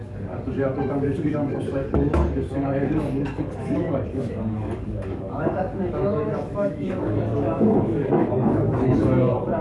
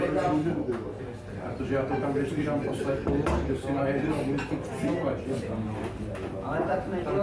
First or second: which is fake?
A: first